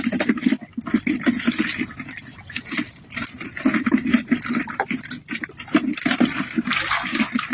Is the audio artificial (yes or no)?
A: no